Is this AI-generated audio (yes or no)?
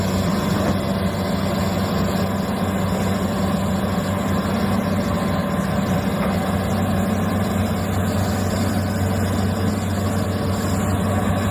no